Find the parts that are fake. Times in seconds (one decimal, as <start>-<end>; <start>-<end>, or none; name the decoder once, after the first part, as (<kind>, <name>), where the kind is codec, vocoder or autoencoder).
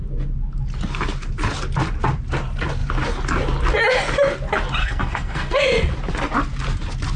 4.8-5.6 (codec, SNAC)